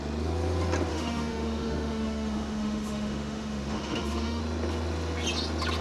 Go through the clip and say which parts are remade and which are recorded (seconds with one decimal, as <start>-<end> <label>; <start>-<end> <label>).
0.0-0.9 recorded; 0.9-4.4 remade; 4.4-5.8 recorded